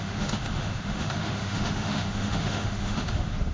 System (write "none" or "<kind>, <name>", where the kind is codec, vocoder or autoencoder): autoencoder, DAC-VAE